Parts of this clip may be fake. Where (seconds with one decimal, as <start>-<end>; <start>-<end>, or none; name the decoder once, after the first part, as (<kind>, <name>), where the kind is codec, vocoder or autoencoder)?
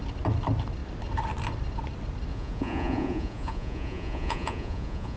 2.3-5.2 (vocoder, Vocos)